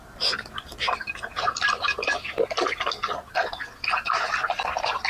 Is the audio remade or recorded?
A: recorded